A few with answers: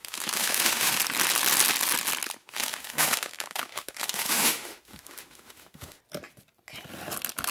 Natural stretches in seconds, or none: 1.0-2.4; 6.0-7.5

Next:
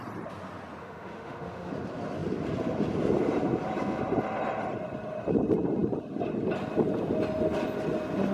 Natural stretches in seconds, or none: 0.0-0.8; 1.7-8.3

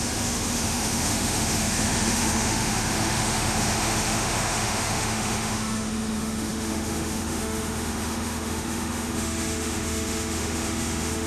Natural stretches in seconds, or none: none

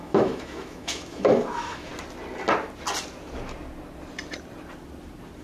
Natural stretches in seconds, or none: 1.9-5.4